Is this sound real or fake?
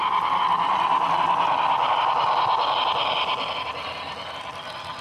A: real